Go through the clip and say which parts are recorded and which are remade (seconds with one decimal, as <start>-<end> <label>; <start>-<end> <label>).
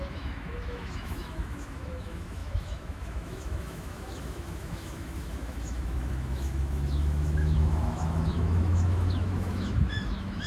0.0-10.5 remade